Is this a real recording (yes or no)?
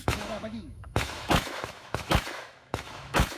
no